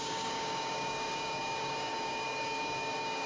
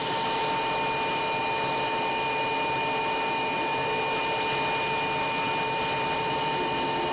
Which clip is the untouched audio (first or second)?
second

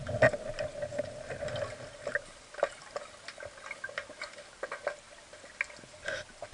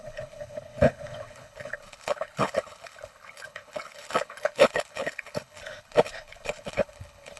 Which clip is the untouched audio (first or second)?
first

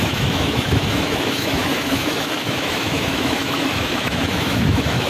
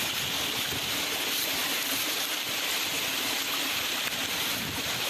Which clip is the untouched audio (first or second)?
second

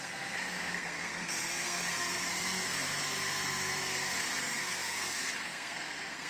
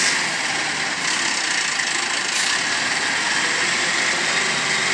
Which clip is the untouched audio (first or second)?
second